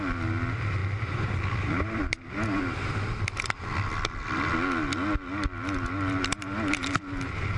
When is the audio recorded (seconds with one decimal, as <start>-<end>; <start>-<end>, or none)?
0.0-7.6